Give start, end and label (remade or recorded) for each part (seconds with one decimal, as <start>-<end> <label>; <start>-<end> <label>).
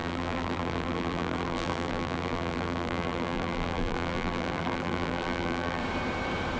0.0-5.8 remade; 5.8-6.6 recorded